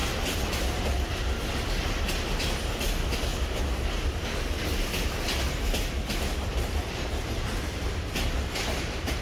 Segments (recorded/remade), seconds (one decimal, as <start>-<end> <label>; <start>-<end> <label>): 0.0-0.8 remade; 0.8-3.3 recorded; 3.3-4.1 remade; 4.1-6.5 recorded; 6.5-9.2 remade